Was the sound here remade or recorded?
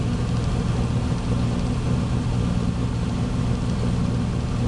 recorded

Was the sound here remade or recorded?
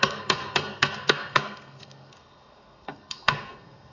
remade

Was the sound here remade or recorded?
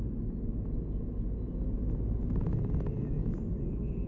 recorded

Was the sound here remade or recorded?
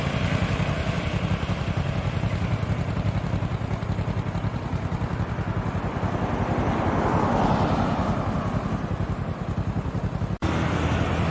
recorded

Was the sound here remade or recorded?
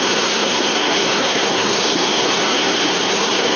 remade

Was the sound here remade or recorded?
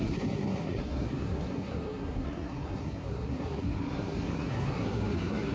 remade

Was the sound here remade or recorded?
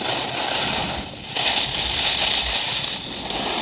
recorded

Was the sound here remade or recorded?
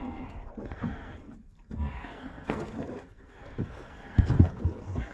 remade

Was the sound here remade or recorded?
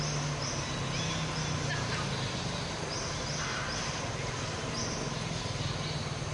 recorded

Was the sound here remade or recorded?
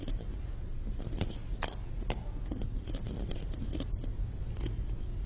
recorded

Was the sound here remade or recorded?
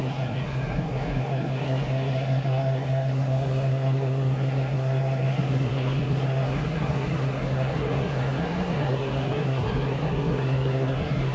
remade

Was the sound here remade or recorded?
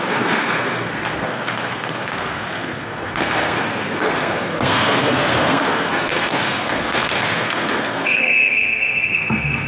remade